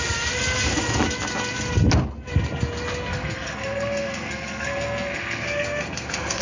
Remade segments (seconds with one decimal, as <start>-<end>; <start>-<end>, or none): 3.1-6.4